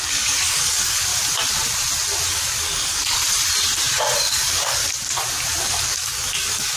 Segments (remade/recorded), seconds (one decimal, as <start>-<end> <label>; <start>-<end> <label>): 0.0-1.1 remade; 1.1-2.3 recorded; 2.3-3.2 remade; 3.2-4.2 recorded; 4.2-4.8 remade; 4.8-5.6 recorded; 5.6-6.8 remade